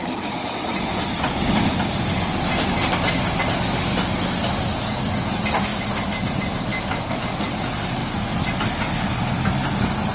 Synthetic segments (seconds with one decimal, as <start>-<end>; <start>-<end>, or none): 0.9-2.1